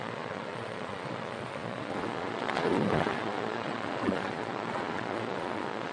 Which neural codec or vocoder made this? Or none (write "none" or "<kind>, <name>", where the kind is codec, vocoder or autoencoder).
vocoder, Vocos